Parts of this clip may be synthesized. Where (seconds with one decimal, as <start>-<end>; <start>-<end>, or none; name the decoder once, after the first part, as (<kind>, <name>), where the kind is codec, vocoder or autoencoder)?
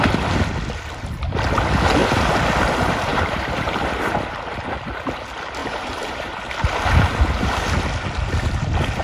3.1-4.2 (vocoder, BigVGAN v2); 5.6-6.3